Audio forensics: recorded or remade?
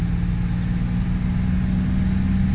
recorded